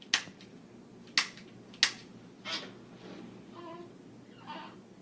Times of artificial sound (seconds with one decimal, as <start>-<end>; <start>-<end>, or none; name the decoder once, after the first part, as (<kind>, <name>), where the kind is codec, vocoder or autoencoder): none